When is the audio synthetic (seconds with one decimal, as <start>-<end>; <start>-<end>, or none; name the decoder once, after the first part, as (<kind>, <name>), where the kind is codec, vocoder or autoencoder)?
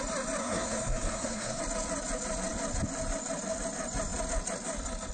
0.4-1.6 (codec, SNAC)